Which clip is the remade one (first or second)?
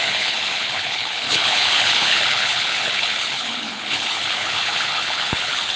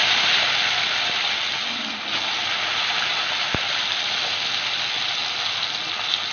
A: first